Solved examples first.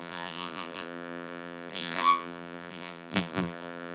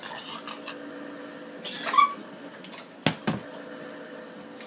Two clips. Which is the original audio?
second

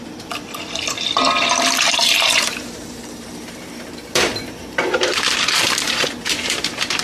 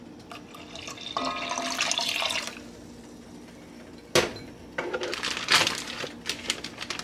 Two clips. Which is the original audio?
second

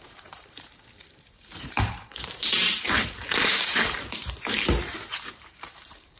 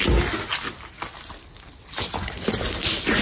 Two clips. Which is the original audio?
second